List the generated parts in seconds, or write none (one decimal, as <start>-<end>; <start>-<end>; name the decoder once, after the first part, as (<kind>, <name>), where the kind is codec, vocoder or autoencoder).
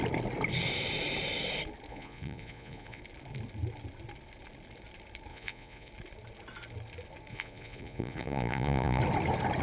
1.9-3.0 (vocoder, Vocos); 5.3-5.9; 7.3-9.0